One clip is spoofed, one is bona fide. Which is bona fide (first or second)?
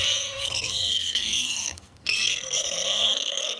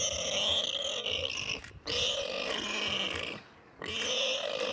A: second